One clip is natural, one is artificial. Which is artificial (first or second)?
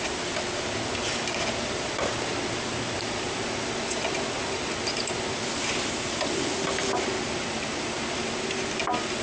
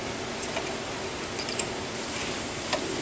second